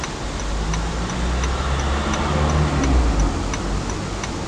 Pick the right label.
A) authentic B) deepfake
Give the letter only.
A